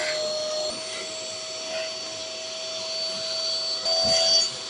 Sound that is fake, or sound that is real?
real